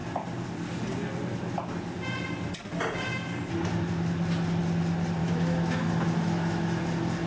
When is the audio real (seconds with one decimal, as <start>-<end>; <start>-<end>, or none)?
0.0-5.2; 6.8-7.3